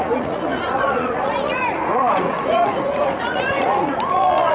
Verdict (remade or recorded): remade